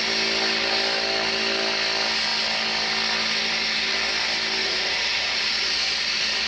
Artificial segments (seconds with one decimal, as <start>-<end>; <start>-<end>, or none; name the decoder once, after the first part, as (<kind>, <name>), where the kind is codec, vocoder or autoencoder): 4.6-5.5 (vocoder, Vocos)